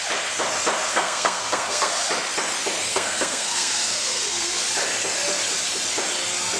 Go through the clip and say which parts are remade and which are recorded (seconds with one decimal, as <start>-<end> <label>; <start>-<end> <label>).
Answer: 0.0-0.9 recorded; 0.9-1.9 remade; 1.9-2.9 recorded; 2.9-4.6 remade; 4.6-6.6 recorded

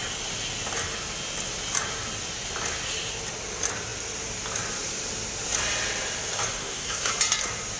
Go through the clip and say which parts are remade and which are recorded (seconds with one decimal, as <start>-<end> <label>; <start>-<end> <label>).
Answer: 0.0-6.6 recorded; 6.6-7.1 remade; 7.1-7.8 recorded

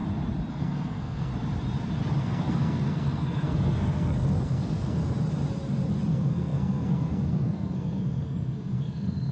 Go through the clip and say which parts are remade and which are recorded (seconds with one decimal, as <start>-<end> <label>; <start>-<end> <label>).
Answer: 0.0-0.5 recorded; 0.5-1.3 remade; 1.3-2.2 recorded; 2.2-5.0 remade; 5.0-6.1 recorded; 6.1-9.3 remade

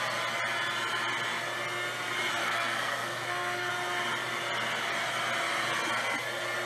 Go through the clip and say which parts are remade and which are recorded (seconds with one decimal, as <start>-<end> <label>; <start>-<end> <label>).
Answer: 0.0-2.4 recorded; 2.4-3.7 remade; 3.7-6.7 recorded

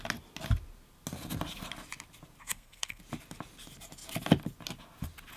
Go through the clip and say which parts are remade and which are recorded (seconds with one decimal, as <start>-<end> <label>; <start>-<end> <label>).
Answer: 0.0-2.4 recorded; 2.4-3.0 remade; 3.0-5.4 recorded